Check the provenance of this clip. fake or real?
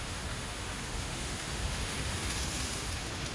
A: fake